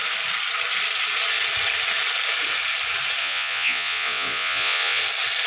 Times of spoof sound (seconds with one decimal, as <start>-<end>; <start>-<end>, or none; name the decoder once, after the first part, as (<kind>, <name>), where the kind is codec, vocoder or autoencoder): 3.2-5.0 (vocoder, Vocos)